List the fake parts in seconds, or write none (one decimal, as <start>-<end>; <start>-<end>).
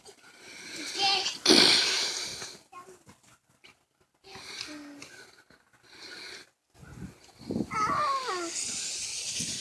none